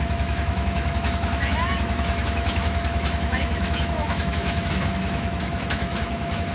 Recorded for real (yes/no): no